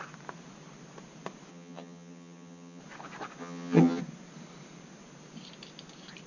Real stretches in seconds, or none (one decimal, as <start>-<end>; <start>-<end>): 0.0-1.5; 2.8-3.4; 4.0-6.3